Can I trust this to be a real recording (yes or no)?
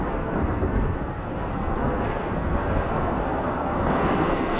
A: no